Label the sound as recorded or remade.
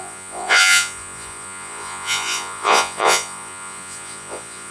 remade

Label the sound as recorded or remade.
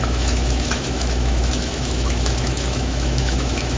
remade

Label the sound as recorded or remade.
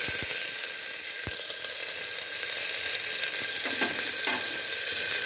recorded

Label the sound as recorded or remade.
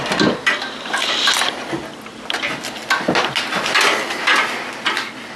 recorded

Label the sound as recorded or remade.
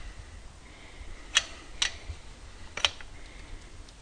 recorded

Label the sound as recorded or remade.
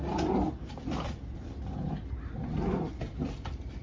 recorded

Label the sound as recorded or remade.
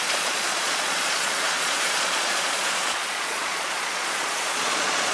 remade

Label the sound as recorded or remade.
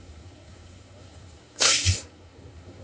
remade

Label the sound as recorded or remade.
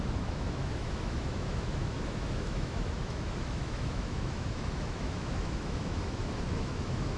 remade